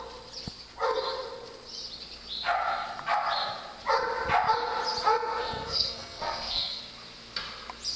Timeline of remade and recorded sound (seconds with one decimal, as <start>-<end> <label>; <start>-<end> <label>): 0.0-5.0 recorded; 5.0-6.8 remade; 6.8-8.0 recorded